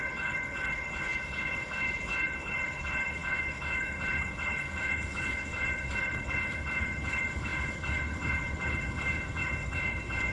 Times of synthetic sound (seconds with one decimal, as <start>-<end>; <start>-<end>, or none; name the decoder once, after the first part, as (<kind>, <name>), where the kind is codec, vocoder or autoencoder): 0.0-10.3 (codec, HILCodec)